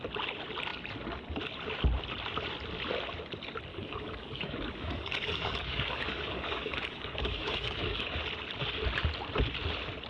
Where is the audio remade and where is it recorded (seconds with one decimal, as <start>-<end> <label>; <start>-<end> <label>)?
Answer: 0.0-3.7 recorded; 3.7-8.1 remade; 8.1-10.1 recorded

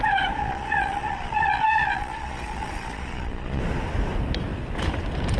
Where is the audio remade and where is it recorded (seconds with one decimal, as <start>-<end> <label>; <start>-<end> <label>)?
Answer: 0.0-0.4 recorded; 0.4-3.6 remade; 3.6-5.4 recorded

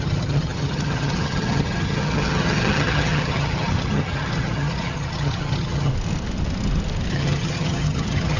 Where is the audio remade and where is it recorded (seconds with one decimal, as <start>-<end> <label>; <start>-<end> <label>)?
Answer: 0.0-5.9 remade; 5.9-7.1 recorded; 7.1-8.4 remade

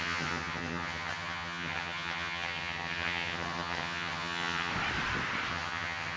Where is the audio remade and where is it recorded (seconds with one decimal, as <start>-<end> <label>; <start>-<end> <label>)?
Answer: 0.0-4.7 remade; 4.7-5.5 recorded; 5.5-6.2 remade